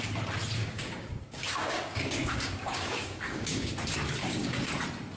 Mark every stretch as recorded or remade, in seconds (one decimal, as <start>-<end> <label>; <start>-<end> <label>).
0.0-0.6 recorded; 0.6-3.7 remade; 3.7-4.2 recorded; 4.2-4.7 remade; 4.7-5.2 recorded